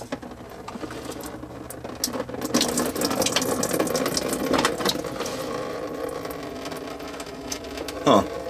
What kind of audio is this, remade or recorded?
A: recorded